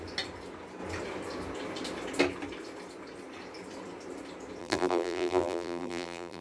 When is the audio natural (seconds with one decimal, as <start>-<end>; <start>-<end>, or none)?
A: 0.0-4.6